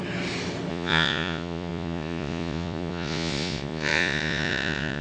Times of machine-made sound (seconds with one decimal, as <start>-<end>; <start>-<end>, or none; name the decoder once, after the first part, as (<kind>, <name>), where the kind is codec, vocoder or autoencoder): 0.7-5.0 (vocoder, Vocos)